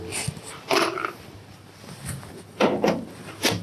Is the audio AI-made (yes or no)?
no